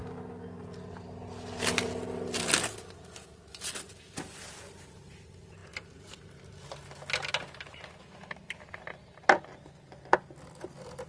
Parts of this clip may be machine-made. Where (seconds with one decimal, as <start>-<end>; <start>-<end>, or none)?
none